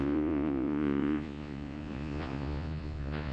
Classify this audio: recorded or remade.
remade